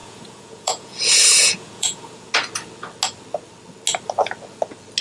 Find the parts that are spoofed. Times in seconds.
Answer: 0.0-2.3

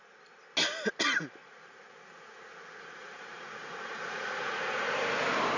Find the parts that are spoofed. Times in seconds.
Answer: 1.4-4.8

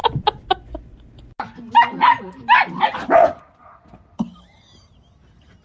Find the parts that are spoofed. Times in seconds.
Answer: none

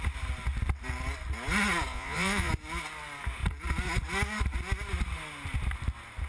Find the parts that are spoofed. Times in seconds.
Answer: 1.9-2.5

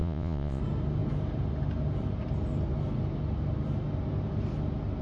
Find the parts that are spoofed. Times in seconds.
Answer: 0.0-0.6